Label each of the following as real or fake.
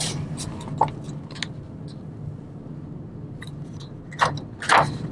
real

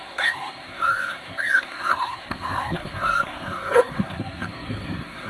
fake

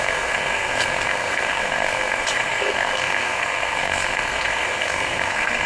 fake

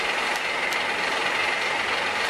real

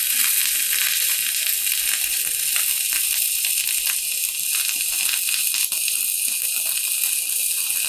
real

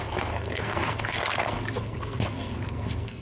fake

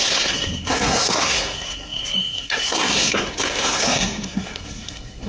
fake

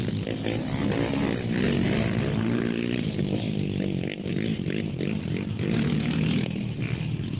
real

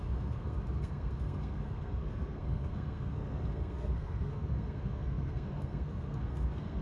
fake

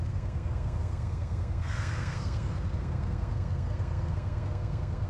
fake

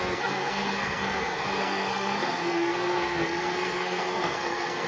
fake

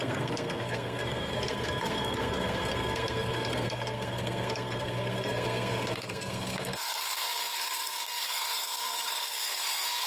fake